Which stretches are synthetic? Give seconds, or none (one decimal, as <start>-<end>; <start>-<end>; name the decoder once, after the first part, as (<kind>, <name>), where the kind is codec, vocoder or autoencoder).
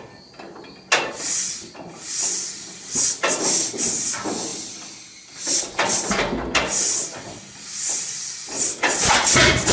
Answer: none